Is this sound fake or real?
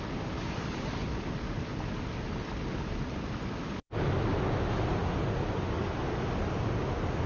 real